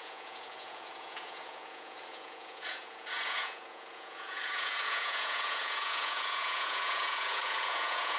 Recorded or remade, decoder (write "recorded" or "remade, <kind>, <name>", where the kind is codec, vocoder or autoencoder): remade, vocoder, Vocos